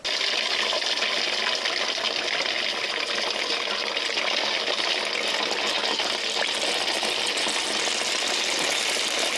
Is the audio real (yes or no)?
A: yes